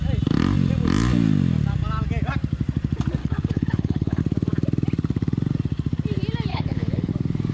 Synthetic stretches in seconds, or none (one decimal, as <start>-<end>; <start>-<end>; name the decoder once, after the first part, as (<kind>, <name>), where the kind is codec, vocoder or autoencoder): 3.2-4.2 (codec, HILCodec); 6.5-7.1